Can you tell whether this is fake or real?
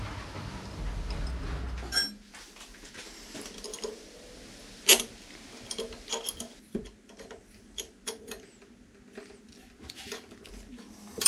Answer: real